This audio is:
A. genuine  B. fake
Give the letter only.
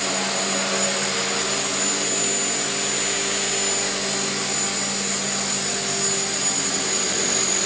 A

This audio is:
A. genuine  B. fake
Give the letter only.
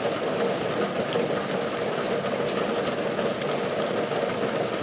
A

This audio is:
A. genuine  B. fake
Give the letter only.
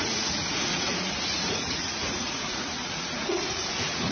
B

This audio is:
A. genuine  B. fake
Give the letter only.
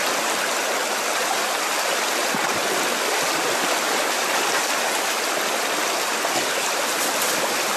A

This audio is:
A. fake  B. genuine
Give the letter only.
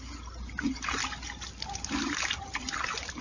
B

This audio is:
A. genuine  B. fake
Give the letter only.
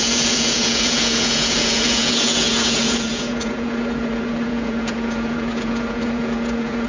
B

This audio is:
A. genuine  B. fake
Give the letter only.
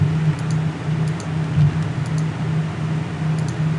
A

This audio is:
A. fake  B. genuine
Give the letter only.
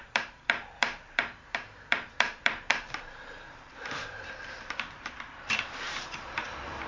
A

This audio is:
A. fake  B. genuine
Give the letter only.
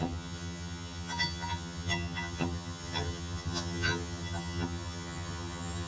A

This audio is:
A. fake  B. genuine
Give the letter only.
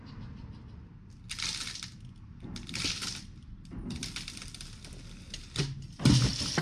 B